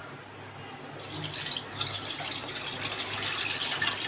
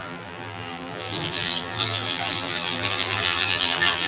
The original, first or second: first